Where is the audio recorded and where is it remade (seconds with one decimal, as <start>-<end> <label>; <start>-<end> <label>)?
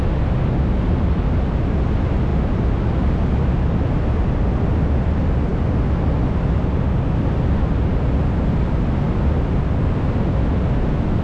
0.0-11.2 recorded